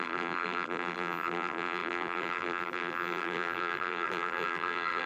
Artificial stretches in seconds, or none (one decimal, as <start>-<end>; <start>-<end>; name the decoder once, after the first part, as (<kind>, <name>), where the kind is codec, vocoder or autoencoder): 0.0-5.1 (vocoder, BigVGAN v2)

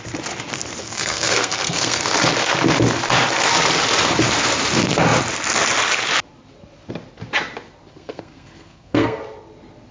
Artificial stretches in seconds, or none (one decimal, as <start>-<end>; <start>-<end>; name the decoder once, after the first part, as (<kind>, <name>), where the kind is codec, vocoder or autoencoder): 0.8-2.0 (codec, SNAC); 7.9-9.2

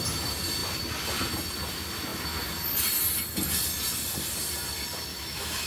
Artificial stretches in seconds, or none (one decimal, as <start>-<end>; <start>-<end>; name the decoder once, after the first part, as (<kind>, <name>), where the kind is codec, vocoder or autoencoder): 5.1-5.7 (autoencoder, DAC-VAE)